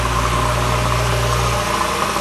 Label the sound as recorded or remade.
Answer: recorded